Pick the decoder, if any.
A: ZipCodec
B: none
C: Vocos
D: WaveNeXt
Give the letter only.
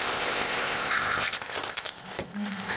A